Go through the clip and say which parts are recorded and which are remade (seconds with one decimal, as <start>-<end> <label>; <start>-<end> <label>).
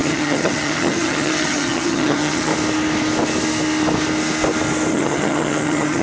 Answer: 0.0-2.5 remade; 2.5-4.9 recorded; 4.9-6.0 remade